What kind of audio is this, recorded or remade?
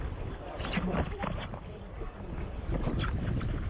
recorded